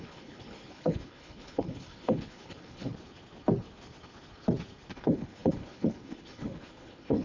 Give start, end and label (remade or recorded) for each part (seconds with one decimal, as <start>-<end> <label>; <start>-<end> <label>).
0.0-2.9 remade; 2.9-4.9 recorded; 4.9-7.2 remade